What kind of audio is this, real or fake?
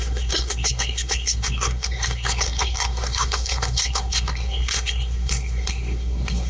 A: fake